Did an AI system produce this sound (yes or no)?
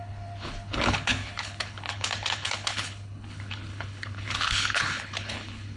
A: yes